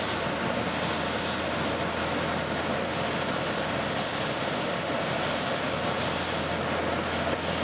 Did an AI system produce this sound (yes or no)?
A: no